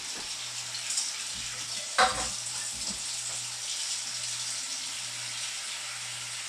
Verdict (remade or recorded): recorded